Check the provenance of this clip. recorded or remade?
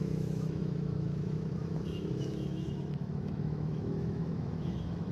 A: remade